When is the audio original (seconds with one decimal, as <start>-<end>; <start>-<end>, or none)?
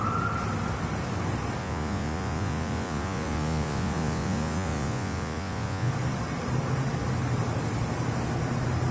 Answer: 0.0-1.6; 5.9-8.9